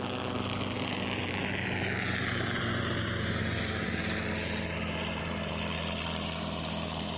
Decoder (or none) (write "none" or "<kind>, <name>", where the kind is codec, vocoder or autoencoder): vocoder, BigVGAN v2